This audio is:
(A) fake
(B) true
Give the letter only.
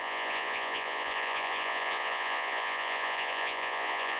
A